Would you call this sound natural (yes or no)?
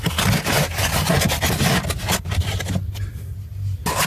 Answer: yes